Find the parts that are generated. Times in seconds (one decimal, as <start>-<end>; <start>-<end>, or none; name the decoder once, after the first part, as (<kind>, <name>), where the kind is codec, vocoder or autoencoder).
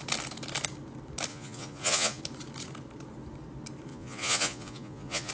1.3-2.2 (vocoder, Vocos); 3.9-5.3